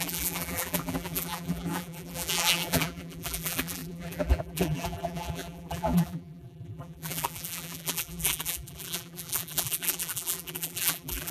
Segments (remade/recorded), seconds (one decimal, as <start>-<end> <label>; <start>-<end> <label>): 0.0-11.3 remade